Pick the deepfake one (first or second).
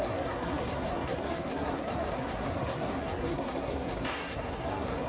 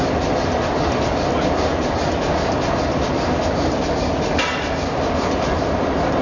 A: first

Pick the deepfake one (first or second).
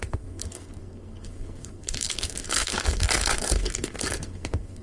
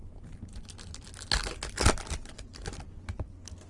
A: first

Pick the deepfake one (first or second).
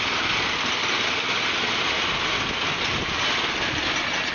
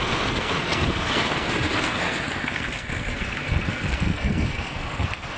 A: second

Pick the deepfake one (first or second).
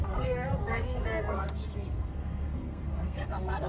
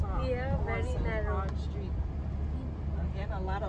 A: first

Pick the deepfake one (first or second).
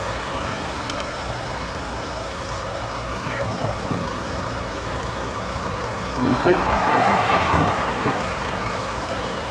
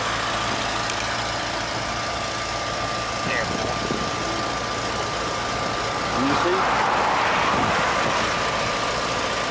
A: first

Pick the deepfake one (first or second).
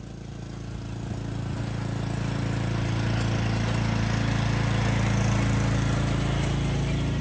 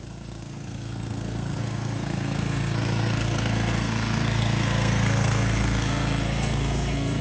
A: second